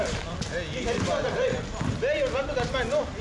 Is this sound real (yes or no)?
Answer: no